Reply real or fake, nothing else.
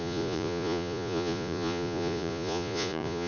fake